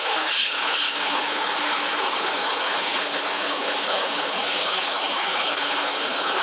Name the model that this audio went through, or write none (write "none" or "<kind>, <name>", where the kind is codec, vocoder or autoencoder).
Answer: codec, HILCodec